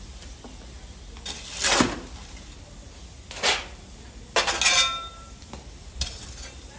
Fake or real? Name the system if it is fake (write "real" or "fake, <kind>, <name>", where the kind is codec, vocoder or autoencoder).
real